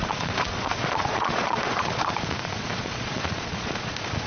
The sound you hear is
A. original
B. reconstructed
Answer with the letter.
B